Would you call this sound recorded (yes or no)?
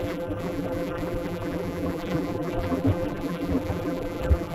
no